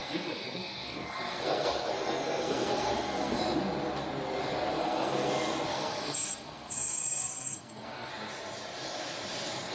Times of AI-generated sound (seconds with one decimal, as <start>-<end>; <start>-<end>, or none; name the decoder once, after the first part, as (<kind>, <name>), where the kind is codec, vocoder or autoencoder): 0.0-3.4 (codec, SNAC); 4.8-5.3; 5.7-8.1